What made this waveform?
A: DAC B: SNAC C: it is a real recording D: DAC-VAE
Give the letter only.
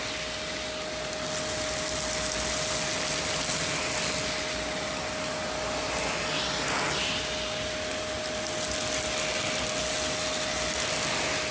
C